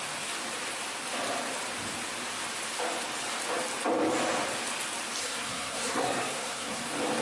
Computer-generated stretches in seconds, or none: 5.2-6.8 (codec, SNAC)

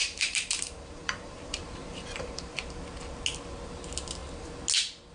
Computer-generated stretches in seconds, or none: 0.0-2.8 (vocoder, BigVGAN v2)

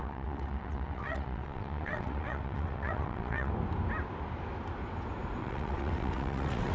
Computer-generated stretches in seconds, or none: 0.0-3.5 (vocoder, WaveNeXt); 5.4-6.7

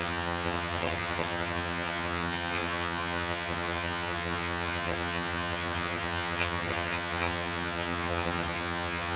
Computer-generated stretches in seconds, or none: 0.0-9.2 (vocoder, HiFi-GAN)

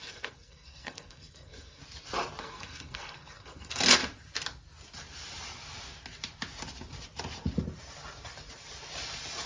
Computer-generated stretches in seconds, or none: 0.0-1.8 (codec, SNAC); 2.4-4.0

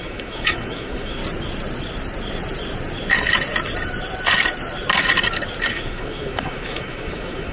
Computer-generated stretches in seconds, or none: 0.0-1.2 (autoencoder, DAC-VAE); 5.7-7.5

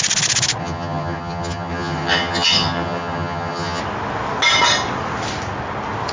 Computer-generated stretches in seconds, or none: 0.6-3.8 (vocoder, HiFi-GAN)